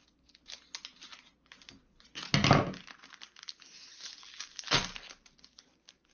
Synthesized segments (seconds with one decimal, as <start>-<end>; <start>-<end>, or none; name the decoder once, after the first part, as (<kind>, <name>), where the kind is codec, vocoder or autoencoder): none